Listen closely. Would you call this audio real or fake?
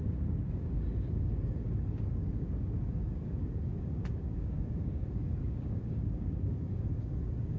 fake